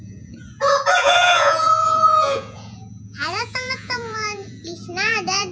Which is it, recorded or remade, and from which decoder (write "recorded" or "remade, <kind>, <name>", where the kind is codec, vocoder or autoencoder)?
remade, vocoder, Vocos